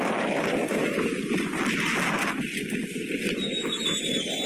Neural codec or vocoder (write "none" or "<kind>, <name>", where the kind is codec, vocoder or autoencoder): none